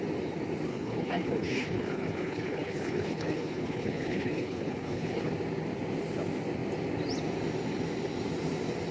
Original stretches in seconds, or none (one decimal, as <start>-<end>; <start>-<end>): 0.0-0.7; 5.3-8.9

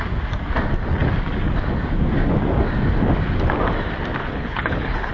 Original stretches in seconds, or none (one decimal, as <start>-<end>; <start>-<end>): 0.0-4.2

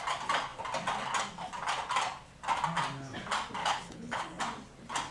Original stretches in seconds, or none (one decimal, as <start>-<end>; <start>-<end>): 0.0-3.6; 4.4-5.1

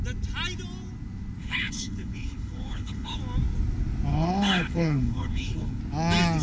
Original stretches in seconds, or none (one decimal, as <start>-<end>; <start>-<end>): 0.0-1.4; 3.2-4.1; 5.8-6.4